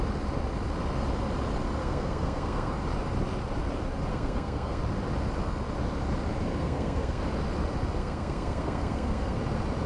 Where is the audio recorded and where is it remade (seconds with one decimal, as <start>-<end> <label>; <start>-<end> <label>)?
0.0-1.8 recorded; 1.8-2.7 remade; 2.7-4.1 recorded; 4.1-4.8 remade; 4.8-6.6 recorded; 6.6-7.2 remade; 7.2-8.0 recorded; 8.0-9.4 remade; 9.4-9.9 recorded